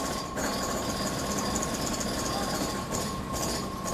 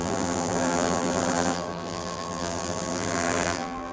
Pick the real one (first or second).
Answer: first